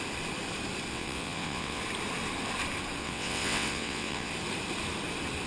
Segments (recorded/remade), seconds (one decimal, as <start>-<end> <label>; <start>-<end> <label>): 0.0-0.9 recorded; 0.9-1.8 remade; 1.8-3.0 recorded; 3.0-4.3 remade; 4.3-5.5 recorded